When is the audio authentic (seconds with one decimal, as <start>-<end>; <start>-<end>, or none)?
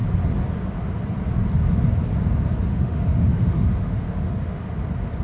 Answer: 0.0-2.7; 4.6-5.2